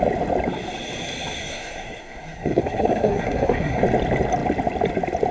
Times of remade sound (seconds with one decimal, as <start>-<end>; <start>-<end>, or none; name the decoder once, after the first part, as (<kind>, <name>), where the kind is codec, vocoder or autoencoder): 1.4-3.8 (codec, SNAC)

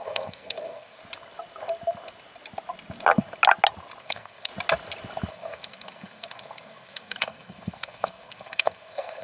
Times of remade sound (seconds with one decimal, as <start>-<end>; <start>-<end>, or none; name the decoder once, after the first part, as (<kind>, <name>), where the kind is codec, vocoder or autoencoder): 0.0-1.0 (codec, SNAC); 4.0-4.5; 5.3-9.2

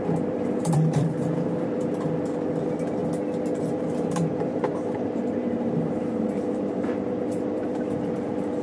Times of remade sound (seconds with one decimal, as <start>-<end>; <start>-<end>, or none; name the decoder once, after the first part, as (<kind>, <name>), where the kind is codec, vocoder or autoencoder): 0.0-3.0 (vocoder, BigVGAN v2); 3.6-8.6